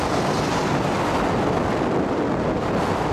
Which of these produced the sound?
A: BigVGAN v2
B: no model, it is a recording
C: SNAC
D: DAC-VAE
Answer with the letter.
B